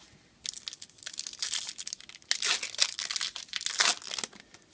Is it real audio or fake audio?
real